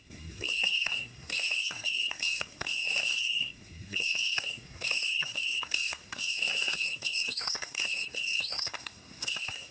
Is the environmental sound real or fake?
fake